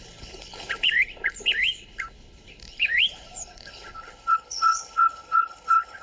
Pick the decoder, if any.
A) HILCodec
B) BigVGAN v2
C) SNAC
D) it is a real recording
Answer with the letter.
A